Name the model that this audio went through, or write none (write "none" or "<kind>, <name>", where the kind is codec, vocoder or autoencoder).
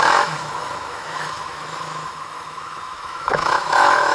autoencoder, DAC-VAE